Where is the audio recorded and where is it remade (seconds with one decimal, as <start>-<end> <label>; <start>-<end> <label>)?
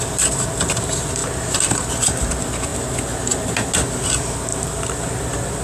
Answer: 0.0-4.5 recorded; 4.5-5.1 remade; 5.1-5.6 recorded